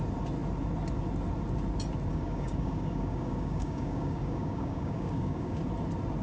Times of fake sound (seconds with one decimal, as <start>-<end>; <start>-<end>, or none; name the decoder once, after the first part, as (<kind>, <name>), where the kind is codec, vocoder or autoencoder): 2.1-5.6 (codec, DAC)